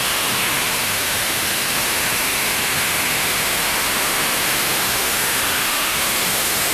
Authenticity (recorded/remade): remade